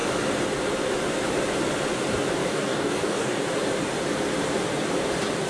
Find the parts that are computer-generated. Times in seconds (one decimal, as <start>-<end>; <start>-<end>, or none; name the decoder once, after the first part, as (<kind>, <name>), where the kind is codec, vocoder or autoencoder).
2.4-3.4 (codec, DAC)